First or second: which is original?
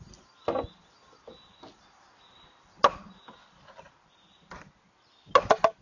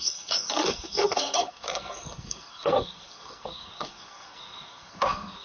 first